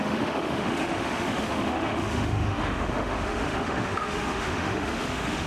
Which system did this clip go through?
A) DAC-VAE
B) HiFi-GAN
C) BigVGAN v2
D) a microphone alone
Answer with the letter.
A